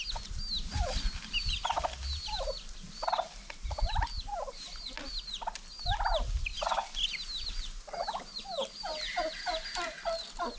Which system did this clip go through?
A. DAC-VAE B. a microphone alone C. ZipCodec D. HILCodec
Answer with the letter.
B